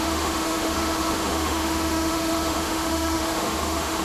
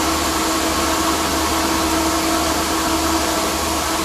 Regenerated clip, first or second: first